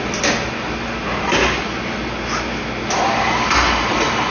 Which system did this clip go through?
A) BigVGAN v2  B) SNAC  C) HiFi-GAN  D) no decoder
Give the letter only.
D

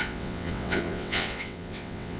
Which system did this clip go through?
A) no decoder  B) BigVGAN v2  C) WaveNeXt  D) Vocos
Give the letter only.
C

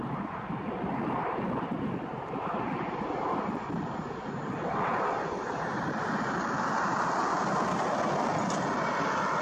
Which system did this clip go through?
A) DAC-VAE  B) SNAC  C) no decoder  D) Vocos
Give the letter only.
C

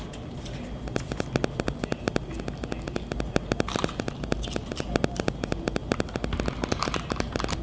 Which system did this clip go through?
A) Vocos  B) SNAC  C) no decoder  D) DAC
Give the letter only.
C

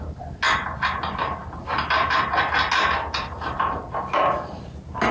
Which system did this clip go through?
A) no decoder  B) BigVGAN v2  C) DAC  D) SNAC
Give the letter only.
A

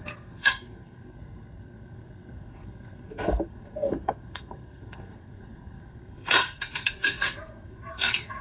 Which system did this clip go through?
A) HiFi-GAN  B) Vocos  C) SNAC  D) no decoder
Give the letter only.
C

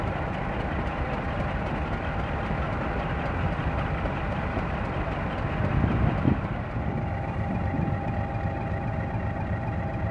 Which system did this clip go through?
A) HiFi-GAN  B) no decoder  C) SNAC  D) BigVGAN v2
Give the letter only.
D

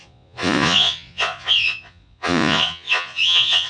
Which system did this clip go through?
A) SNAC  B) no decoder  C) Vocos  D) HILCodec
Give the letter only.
C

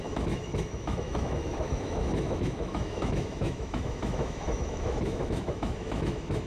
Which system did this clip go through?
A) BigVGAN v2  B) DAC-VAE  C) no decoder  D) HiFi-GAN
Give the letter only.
B